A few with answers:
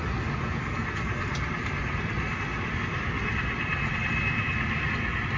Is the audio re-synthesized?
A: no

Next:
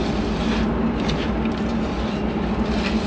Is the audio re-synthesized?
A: no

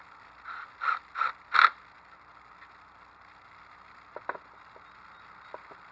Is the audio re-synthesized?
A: no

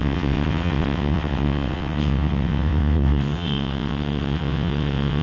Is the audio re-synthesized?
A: yes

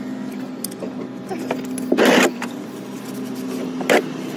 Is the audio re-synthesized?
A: no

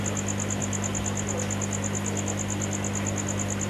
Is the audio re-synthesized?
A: no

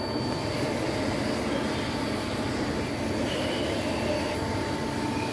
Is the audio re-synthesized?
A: no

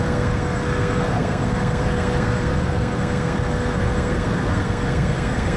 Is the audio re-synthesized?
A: yes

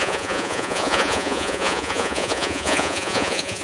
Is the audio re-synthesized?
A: yes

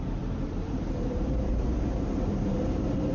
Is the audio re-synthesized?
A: yes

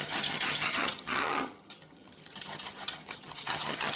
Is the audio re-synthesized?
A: yes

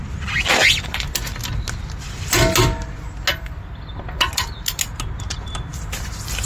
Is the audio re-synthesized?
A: no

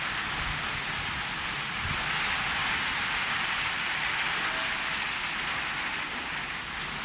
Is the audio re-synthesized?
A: no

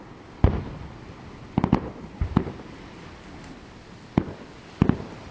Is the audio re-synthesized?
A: no